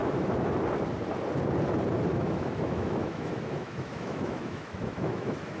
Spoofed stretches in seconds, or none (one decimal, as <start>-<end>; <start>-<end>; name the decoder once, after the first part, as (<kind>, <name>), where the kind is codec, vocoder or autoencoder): 0.0-0.6 (autoencoder, DAC-VAE); 2.1-5.6